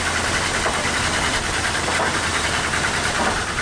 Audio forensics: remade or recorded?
recorded